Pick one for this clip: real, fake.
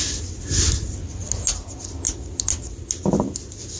real